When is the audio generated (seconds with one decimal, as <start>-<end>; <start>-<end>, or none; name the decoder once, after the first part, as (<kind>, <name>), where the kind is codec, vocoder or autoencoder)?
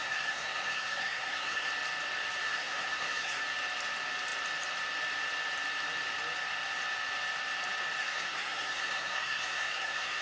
0.0-1.7 (codec, SNAC); 2.4-3.4; 8.0-10.2